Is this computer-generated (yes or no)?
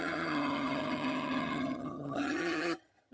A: yes